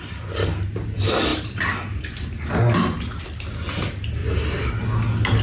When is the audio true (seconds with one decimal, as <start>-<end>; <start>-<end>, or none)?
0.0-1.3; 2.0-4.2; 4.7-5.4